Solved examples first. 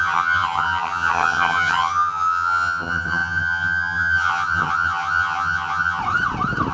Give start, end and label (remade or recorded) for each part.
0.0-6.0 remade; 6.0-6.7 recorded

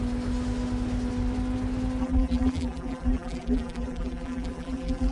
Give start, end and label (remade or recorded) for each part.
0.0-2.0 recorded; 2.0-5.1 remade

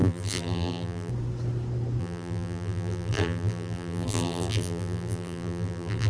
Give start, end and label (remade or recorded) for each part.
0.0-1.1 remade; 1.1-2.0 recorded; 2.0-6.1 remade

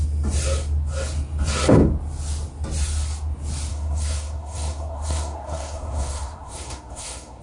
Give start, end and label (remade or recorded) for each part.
0.0-3.7 recorded; 3.7-7.4 remade